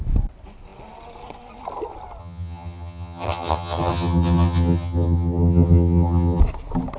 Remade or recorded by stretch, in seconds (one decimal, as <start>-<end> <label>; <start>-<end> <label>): 0.0-2.2 recorded; 2.2-6.4 remade; 6.4-7.0 recorded